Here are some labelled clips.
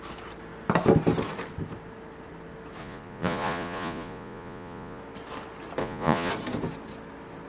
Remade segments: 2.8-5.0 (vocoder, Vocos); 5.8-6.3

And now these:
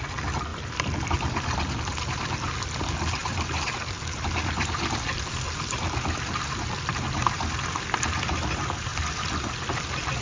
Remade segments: 0.5-1.1 (vocoder, BigVGAN v2); 8.9-9.6